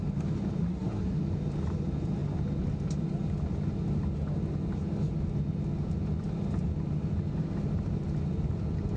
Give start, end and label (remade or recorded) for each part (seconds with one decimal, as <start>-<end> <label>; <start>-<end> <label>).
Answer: 0.0-0.6 recorded; 0.6-1.2 remade; 1.2-9.0 recorded